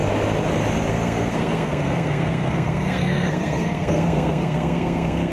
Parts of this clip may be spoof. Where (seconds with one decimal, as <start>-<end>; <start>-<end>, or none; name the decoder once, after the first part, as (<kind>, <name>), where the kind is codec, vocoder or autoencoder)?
0.9-5.3 (codec, SNAC)